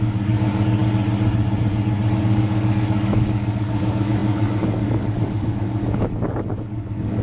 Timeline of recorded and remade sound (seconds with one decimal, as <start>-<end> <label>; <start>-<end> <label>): 0.0-0.8 remade; 0.8-2.2 recorded; 2.2-7.2 remade